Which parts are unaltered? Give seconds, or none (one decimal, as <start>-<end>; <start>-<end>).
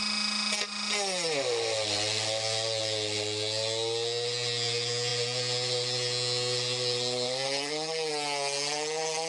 0.0-9.3